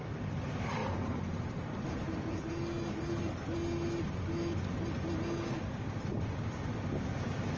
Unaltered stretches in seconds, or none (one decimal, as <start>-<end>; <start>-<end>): 0.0-7.6